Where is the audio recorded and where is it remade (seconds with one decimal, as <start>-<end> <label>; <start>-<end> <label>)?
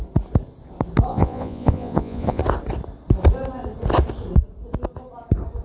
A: 0.0-1.1 recorded; 1.1-2.4 remade; 2.4-5.6 recorded